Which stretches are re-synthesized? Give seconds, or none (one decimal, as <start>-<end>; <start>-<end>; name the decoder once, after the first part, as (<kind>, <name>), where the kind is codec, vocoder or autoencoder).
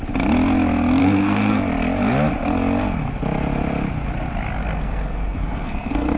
1.0-1.6 (codec, SNAC); 4.6-6.2